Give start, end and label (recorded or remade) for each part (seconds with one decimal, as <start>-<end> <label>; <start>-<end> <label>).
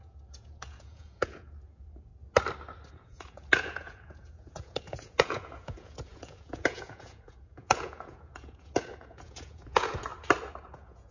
0.0-2.1 remade; 2.1-2.9 recorded; 2.9-10.1 remade; 10.1-10.7 recorded; 10.7-11.1 remade